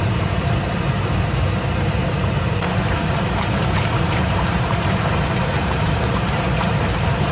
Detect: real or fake fake